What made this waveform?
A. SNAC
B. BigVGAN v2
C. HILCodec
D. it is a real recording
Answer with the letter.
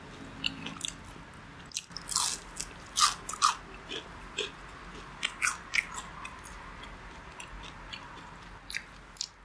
D